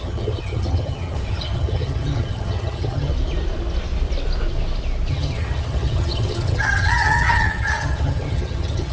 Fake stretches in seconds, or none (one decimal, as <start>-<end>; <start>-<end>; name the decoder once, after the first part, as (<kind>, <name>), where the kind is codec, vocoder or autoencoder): 0.0-3.1 (vocoder, HiFi-GAN); 5.1-8.9